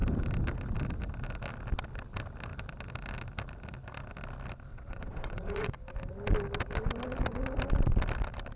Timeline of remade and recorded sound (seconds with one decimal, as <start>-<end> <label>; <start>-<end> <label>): 0.0-4.7 recorded; 4.7-5.7 remade; 5.7-8.6 recorded